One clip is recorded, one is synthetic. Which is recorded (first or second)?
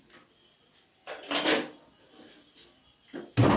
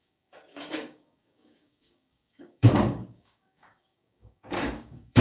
first